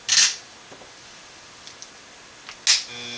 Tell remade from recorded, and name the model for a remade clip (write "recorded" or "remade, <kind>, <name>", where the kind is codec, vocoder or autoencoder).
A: recorded